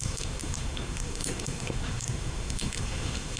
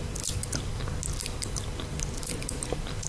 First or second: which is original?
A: second